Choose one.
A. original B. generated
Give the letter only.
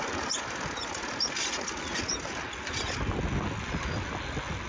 A